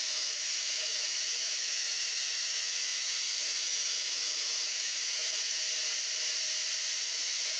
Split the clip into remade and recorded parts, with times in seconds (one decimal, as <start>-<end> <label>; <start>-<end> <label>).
0.0-5.6 remade; 5.6-7.0 recorded; 7.0-7.6 remade